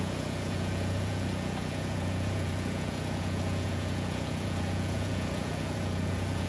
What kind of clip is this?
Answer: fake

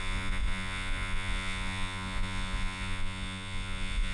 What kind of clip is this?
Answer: fake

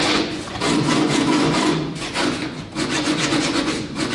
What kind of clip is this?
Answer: fake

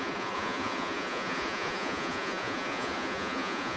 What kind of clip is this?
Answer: fake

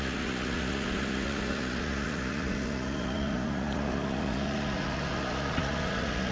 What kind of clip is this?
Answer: fake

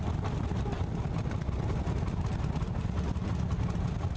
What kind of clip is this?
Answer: real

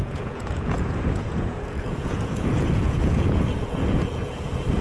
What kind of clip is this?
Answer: fake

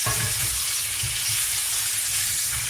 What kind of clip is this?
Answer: fake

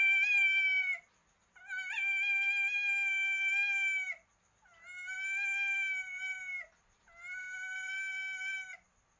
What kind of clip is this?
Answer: real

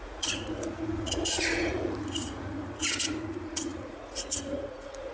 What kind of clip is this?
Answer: fake